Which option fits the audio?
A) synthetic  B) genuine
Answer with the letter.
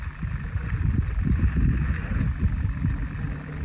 B